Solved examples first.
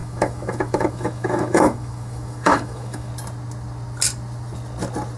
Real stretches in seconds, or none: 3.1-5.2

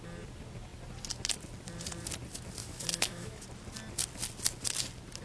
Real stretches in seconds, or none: 0.0-2.6; 3.4-5.2